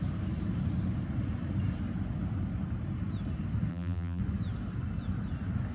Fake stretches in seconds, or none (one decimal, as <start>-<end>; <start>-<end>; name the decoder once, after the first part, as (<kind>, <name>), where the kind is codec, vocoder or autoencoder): 3.7-4.2 (vocoder, BigVGAN v2)